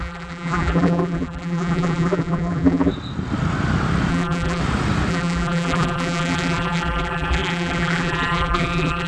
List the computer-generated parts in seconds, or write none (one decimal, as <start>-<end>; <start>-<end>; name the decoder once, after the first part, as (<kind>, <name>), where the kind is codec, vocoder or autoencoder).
0.0-2.9 (vocoder, BigVGAN v2); 4.1-4.6; 5.1-9.1